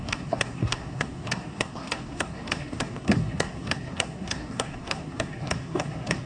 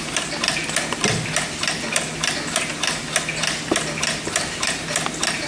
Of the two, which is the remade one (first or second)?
first